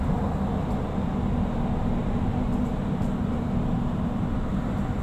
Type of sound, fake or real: real